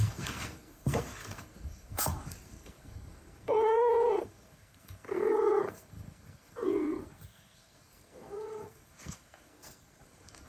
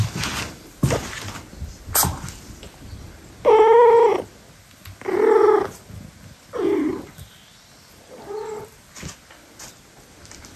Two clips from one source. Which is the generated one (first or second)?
first